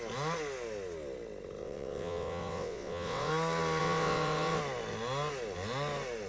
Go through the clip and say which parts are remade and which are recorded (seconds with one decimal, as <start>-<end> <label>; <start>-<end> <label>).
0.0-1.6 recorded; 1.6-3.3 remade; 3.3-3.8 recorded; 3.8-4.6 remade; 4.6-6.3 recorded